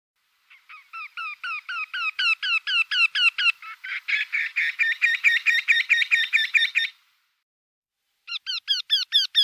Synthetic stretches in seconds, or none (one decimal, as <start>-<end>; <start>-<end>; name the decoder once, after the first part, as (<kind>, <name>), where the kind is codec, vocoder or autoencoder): 5.0-7.0 (vocoder, BigVGAN v2)